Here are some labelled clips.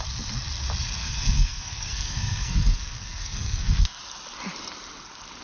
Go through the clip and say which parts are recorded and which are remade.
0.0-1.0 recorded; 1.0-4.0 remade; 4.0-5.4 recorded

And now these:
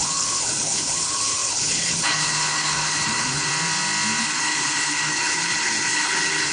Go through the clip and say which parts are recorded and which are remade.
0.0-3.5 remade; 3.5-4.2 recorded; 4.2-6.5 remade